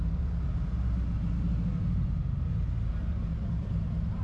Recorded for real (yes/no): yes